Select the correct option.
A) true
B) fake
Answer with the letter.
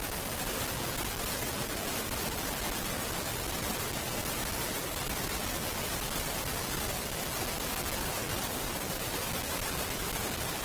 A